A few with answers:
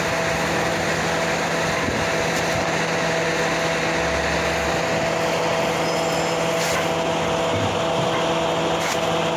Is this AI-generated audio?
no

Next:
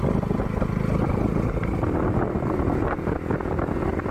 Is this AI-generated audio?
no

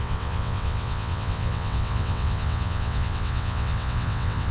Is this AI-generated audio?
yes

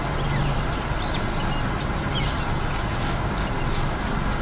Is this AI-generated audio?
no